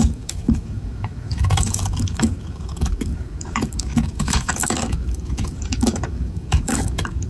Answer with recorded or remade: remade